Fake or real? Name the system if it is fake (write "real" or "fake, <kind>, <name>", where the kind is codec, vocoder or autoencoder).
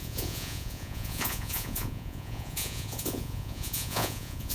fake, vocoder, Vocos